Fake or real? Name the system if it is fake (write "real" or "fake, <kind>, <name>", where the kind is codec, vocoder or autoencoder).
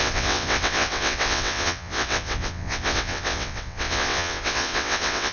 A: fake, vocoder, WaveNeXt